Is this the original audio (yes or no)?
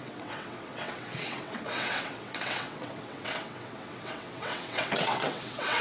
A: no